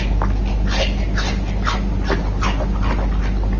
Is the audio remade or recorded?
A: recorded